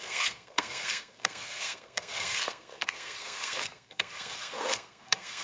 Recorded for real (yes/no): no